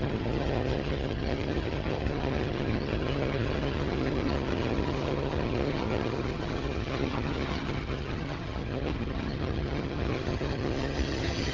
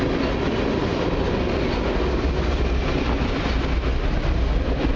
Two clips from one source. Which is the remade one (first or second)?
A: first